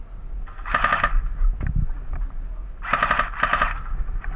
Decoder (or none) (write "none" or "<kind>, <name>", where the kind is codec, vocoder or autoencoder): none